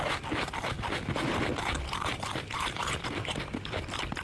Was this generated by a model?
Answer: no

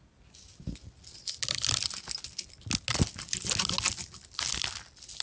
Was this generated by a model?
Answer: no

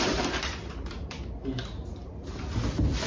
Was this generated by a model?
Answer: no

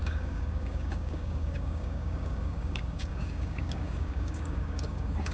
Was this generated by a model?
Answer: yes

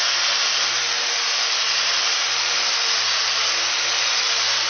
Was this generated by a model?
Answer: no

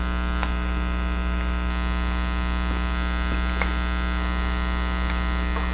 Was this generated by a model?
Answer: no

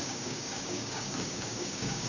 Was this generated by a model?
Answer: yes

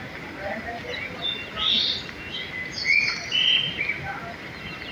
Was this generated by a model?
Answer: no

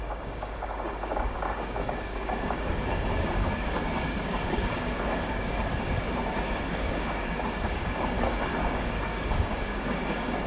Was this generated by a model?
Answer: yes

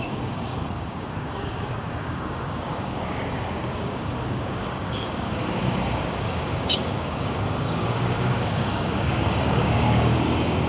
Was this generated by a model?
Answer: yes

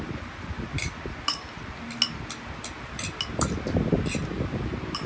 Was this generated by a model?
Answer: no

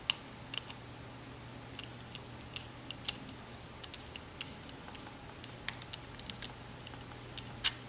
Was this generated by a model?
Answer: no